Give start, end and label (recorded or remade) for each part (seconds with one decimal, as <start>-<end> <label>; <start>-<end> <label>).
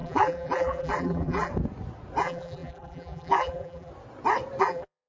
0.0-1.5 remade; 1.5-2.2 recorded; 2.2-3.9 remade; 3.9-4.6 recorded; 4.6-5.1 remade